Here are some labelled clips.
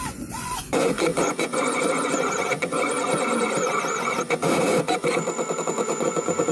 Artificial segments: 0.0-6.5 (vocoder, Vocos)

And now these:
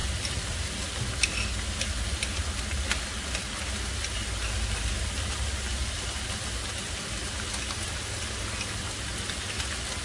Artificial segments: none

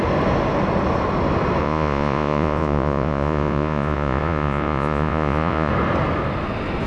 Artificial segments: 1.6-5.7 (vocoder, Vocos)

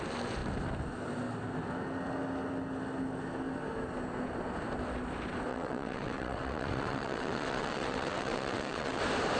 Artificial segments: 5.5-9.0 (vocoder, WaveNeXt)

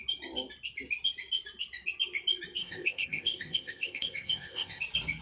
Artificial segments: 2.6-4.8 (codec, ZipCodec)

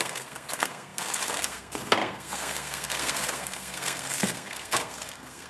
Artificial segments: 0.0-5.5 (codec, SNAC)

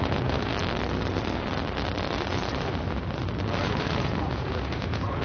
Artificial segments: 0.0-0.5 (vocoder, Vocos); 3.6-5.2

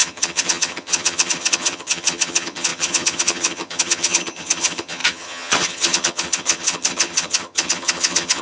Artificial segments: 0.0-8.4 (vocoder, HiFi-GAN)